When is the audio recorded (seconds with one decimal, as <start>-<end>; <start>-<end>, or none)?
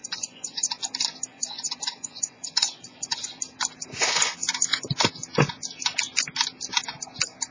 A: 0.9-1.3; 3.4-7.5